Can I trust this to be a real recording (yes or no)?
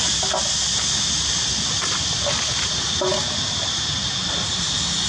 yes